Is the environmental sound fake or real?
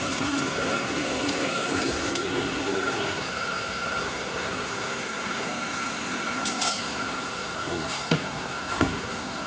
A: fake